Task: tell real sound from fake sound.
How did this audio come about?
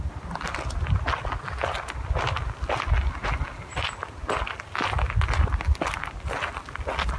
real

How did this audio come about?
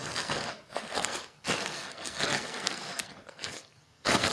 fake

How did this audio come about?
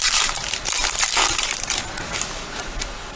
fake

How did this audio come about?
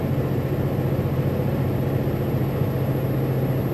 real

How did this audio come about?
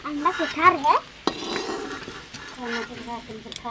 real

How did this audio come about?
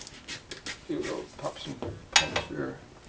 real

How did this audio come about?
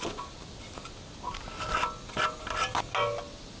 real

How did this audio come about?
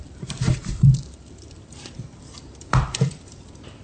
fake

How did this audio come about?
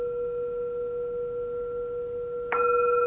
real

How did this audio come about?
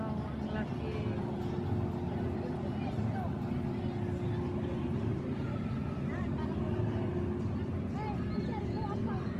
real